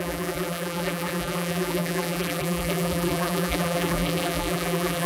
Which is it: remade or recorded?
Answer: remade